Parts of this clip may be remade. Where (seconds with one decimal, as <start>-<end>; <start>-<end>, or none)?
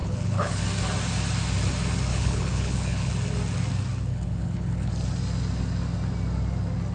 0.0-0.6; 2.1-3.1; 4.1-4.9